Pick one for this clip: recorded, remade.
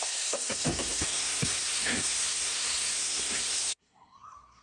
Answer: remade